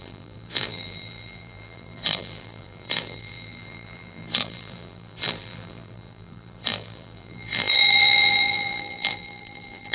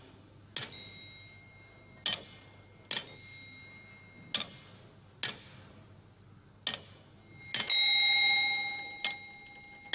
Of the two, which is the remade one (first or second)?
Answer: first